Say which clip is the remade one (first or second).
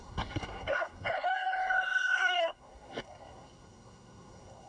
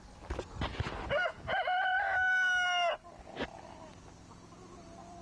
first